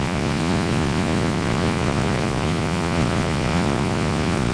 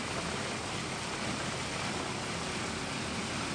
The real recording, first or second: second